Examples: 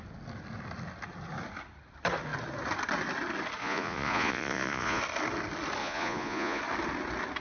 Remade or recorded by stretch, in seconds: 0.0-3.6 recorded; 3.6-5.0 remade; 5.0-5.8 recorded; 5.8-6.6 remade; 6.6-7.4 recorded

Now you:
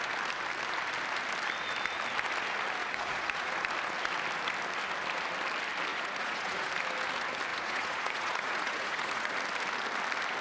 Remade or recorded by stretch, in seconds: 0.0-2.8 recorded; 2.8-3.5 remade; 3.5-5.9 recorded; 5.9-6.7 remade; 6.7-7.5 recorded; 7.5-9.3 remade; 9.3-10.4 recorded

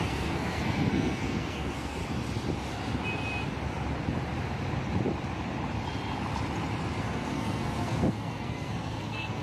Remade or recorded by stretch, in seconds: 0.0-2.0 remade; 2.0-7.0 recorded; 7.0-9.4 remade

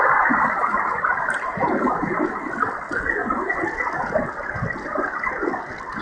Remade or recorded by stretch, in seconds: 0.0-6.0 recorded